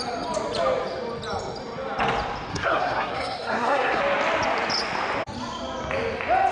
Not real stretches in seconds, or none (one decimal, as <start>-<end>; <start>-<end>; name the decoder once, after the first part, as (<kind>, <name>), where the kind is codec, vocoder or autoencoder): 2.5-4.0 (codec, SNAC)